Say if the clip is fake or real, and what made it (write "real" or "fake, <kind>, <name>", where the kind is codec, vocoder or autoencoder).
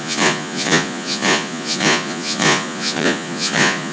fake, vocoder, Vocos